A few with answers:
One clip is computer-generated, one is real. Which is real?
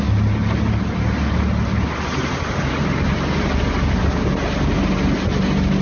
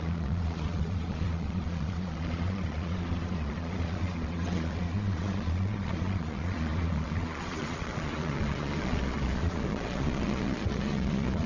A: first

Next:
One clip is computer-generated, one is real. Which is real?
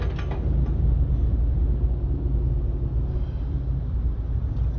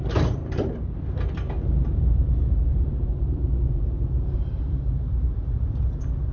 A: first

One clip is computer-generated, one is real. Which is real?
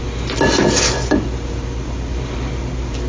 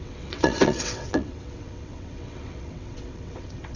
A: first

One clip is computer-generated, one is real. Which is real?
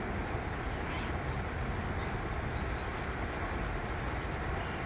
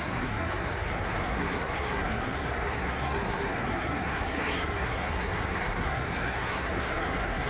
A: first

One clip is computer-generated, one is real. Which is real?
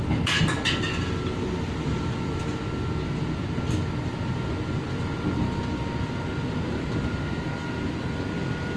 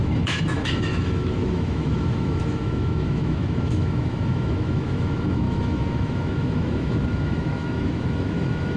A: first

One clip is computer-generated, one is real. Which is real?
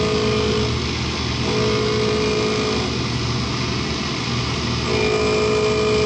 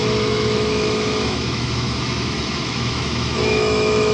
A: first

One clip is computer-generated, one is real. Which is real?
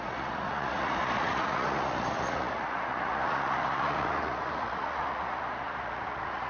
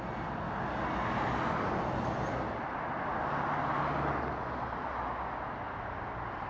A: second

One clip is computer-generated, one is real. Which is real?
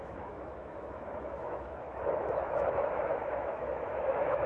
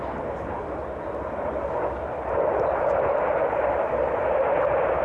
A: second